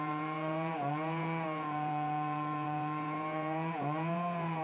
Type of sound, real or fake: fake